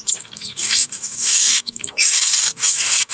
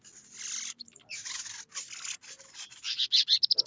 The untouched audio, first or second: second